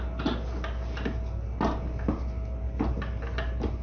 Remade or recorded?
recorded